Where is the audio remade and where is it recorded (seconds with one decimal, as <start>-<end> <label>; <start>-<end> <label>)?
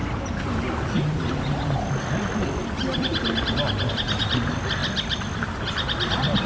0.0-6.5 recorded